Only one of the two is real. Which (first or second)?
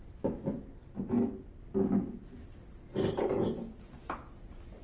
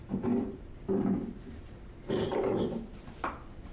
first